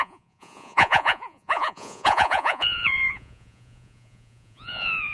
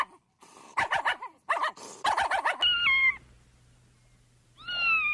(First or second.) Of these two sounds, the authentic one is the second